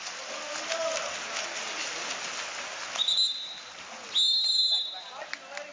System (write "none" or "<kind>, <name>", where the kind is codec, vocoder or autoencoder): none